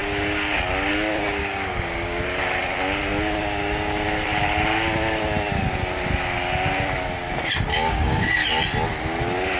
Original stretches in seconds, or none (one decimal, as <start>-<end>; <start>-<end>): 0.0-1.4; 2.2-7.7; 8.3-9.6